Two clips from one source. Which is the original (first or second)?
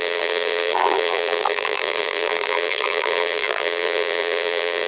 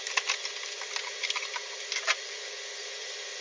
second